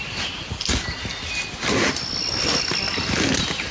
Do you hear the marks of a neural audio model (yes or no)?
no